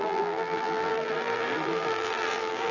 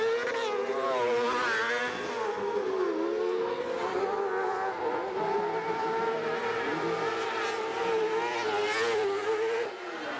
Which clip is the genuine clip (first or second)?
second